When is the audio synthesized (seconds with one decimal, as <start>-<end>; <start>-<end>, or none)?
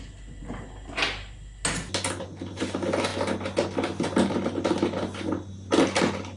none